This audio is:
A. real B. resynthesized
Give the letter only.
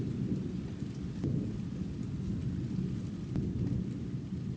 A